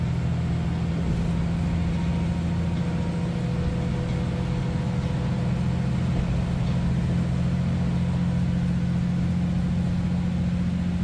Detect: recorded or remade recorded